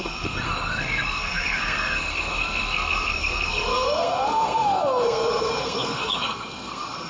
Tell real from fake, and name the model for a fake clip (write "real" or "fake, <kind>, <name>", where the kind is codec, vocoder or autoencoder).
fake, codec, SNAC